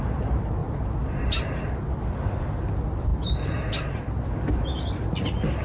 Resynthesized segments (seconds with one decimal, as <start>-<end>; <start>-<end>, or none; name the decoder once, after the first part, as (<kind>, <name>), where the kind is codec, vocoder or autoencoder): none